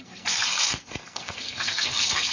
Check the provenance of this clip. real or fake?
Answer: fake